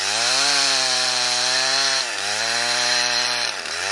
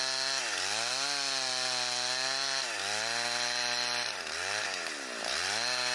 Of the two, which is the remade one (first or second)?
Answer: first